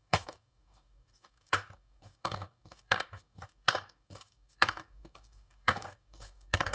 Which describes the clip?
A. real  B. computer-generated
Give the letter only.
B